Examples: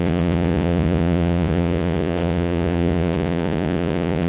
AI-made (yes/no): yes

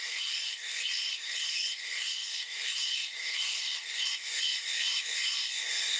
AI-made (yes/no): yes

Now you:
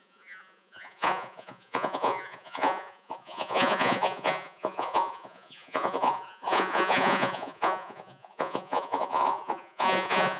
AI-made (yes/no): yes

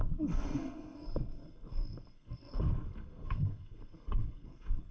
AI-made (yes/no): yes